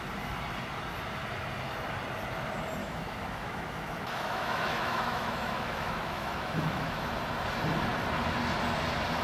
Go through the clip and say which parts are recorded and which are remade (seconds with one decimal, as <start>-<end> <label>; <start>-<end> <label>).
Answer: 0.0-2.8 recorded; 2.8-7.0 remade; 7.0-9.2 recorded